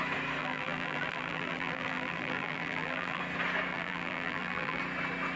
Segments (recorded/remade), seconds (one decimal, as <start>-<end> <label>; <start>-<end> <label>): 0.0-0.4 recorded; 0.4-3.2 remade; 3.2-3.7 recorded; 3.7-4.8 remade; 4.8-5.4 recorded